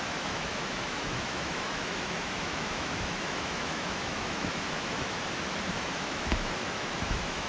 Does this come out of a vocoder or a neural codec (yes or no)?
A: yes